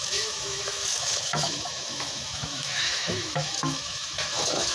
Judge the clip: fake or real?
fake